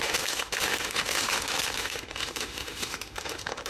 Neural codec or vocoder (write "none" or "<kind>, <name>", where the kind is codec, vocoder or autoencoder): autoencoder, DAC-VAE